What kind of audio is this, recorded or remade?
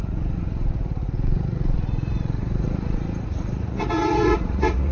remade